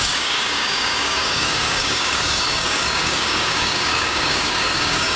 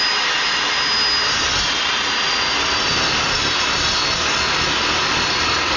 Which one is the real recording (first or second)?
second